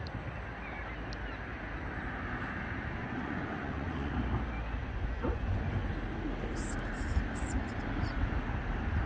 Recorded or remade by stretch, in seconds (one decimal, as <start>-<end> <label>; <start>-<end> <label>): 0.0-3.0 recorded; 3.0-4.1 remade; 4.1-4.8 recorded; 4.8-5.6 remade; 5.6-9.1 recorded